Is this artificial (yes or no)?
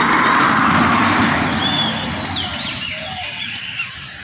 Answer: yes